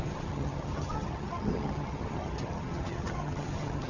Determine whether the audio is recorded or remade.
remade